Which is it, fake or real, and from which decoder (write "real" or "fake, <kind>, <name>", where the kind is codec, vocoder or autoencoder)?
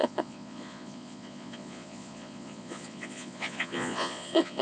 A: fake, vocoder, Vocos